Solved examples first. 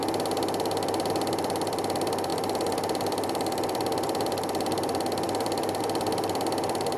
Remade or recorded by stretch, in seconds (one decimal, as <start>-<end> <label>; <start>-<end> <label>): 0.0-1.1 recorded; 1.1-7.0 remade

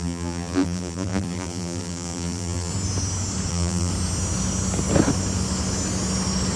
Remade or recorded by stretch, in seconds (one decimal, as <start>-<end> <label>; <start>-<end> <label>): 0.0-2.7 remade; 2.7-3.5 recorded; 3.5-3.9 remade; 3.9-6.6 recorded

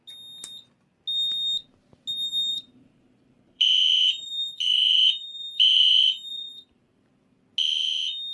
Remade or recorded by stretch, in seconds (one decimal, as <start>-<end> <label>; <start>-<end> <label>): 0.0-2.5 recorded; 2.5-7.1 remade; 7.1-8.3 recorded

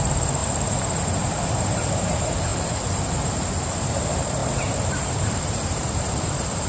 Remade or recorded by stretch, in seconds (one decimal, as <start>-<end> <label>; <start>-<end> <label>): 0.0-6.7 remade

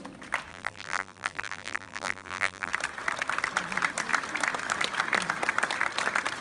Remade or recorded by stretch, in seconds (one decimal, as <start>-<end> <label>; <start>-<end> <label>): 0.0-0.5 recorded; 0.5-2.7 remade; 2.7-6.4 recorded

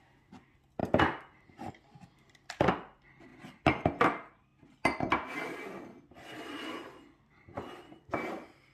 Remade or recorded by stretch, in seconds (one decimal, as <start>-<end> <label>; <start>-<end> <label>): 0.0-0.8 recorded; 0.8-1.7 remade; 1.7-8.7 recorded